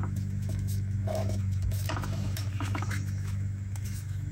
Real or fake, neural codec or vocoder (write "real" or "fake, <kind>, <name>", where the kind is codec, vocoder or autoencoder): fake, autoencoder, DAC-VAE